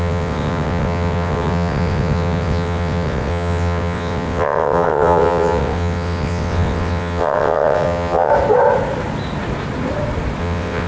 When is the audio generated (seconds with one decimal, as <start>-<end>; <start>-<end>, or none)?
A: 0.0-8.3; 10.4-10.9